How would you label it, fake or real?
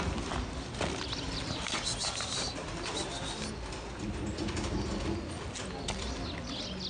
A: real